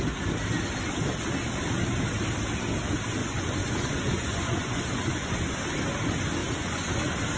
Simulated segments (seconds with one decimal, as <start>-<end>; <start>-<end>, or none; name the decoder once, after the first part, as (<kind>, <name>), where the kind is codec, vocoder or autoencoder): 3.2-5.6 (vocoder, Vocos); 6.4-6.9